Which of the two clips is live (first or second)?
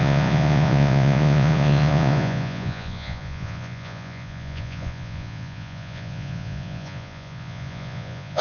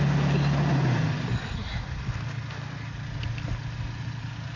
second